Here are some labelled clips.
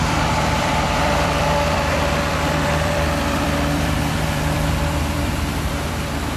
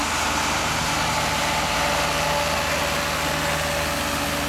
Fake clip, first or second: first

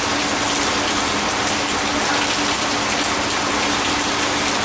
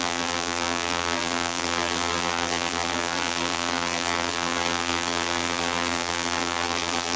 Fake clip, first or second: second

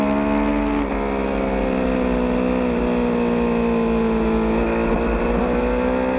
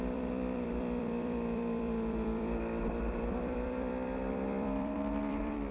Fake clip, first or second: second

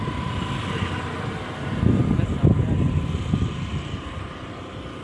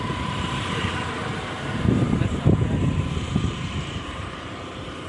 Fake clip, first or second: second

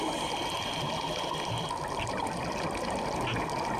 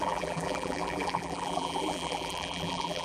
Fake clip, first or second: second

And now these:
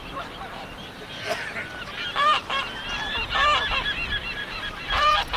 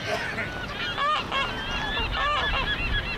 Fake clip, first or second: first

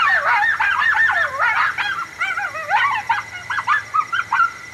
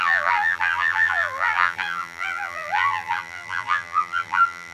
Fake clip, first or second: second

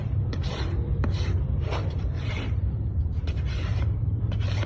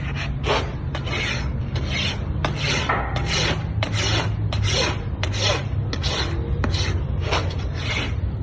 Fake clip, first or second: first